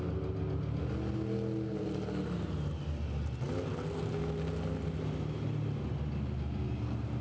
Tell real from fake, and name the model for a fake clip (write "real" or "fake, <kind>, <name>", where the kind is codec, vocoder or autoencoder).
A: real